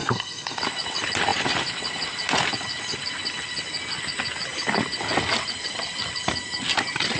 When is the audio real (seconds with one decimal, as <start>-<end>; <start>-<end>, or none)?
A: 0.6-7.2